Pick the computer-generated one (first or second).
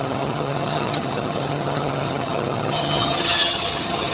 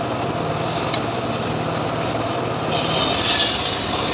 first